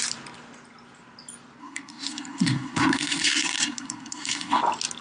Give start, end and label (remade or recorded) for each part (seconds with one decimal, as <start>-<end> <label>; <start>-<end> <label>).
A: 0.0-1.6 recorded; 1.6-4.6 remade; 4.6-5.0 recorded